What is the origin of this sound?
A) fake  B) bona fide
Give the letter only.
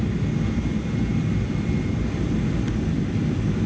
B